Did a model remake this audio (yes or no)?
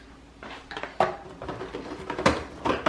no